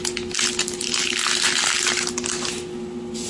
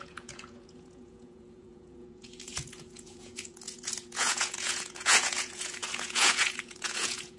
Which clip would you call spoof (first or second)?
second